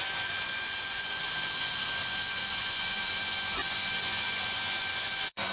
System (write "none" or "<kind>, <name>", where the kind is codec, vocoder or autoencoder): vocoder, Vocos